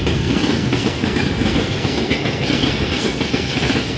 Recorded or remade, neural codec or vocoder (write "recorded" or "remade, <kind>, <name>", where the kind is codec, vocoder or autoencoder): remade, codec, SNAC